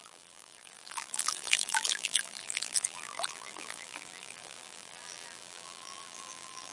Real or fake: fake